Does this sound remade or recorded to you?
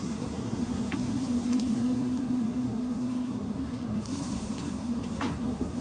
remade